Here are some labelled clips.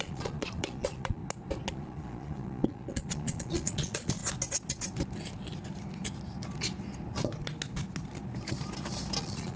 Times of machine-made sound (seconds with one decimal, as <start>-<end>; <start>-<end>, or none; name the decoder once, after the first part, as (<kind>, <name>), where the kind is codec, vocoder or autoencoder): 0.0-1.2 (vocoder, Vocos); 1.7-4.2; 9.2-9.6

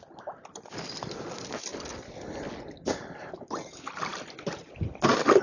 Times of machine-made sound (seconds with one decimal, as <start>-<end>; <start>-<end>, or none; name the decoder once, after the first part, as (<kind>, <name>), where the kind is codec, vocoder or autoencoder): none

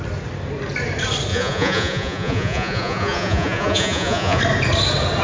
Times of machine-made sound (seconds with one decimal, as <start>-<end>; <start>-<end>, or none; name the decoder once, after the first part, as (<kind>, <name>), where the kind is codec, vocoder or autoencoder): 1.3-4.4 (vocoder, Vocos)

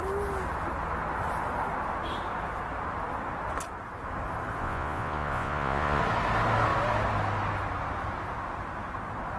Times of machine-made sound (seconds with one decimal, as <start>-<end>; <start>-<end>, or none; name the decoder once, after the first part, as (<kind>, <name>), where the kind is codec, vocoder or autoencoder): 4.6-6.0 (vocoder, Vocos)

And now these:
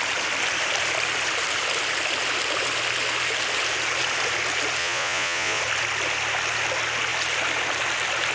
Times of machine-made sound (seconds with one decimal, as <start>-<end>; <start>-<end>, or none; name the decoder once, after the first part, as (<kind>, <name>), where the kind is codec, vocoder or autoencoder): 4.8-5.6 (vocoder, Vocos)

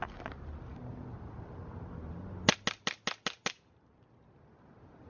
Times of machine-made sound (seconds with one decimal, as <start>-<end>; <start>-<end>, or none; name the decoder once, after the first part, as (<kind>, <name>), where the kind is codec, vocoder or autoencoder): none

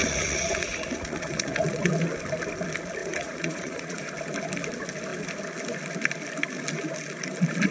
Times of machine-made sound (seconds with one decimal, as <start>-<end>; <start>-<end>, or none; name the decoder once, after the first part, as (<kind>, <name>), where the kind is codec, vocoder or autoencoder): 0.0-1.9 (vocoder, Vocos); 3.0-4.1

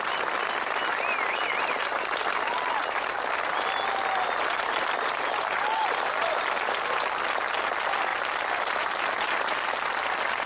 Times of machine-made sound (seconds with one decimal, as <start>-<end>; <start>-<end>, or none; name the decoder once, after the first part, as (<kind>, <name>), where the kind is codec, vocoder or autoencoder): none